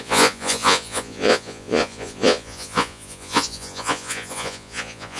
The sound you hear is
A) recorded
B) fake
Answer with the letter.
B